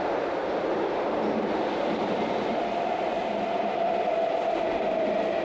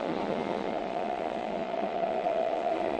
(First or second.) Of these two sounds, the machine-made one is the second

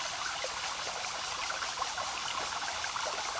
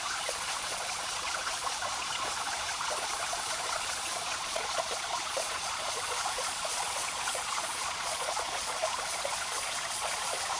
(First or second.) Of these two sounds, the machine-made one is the second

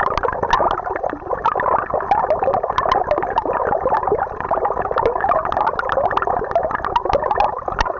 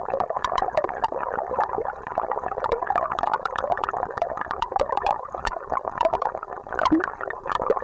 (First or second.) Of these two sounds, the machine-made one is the second